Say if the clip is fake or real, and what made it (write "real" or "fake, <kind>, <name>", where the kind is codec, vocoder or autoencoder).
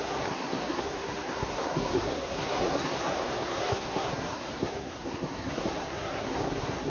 fake, codec, SNAC